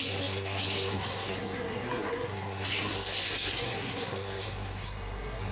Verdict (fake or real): fake